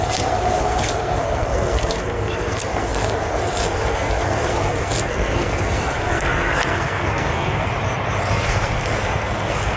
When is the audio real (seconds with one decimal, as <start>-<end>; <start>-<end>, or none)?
7.7-8.3